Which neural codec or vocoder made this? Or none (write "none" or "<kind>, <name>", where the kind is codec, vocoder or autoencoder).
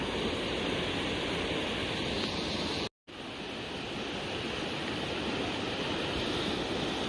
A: none